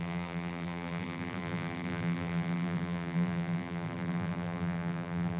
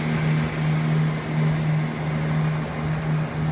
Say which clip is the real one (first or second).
second